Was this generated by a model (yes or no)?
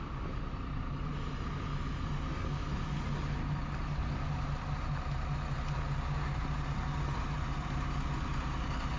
no